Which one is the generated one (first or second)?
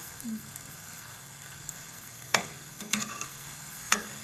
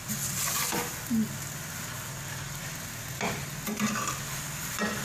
first